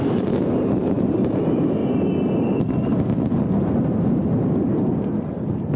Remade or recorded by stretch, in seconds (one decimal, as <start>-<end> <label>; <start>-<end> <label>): 0.0-1.8 remade; 1.8-5.3 recorded; 5.3-5.8 remade